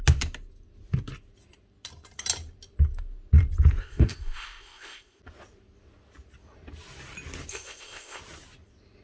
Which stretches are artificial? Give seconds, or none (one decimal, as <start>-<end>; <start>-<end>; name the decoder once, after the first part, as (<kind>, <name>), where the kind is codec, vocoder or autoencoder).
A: 3.8-5.2 (codec, ZipCodec); 7.5-8.2